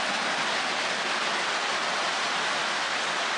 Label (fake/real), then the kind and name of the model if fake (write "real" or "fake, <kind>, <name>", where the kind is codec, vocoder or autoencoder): real